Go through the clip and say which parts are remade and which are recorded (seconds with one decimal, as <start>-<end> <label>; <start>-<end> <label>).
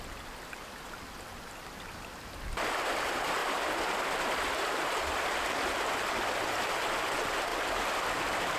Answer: 0.0-8.6 remade